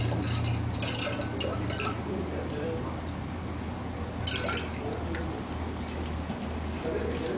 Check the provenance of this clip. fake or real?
real